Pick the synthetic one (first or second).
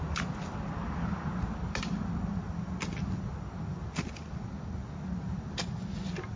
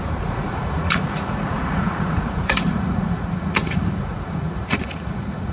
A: second